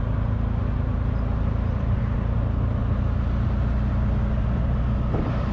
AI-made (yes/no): no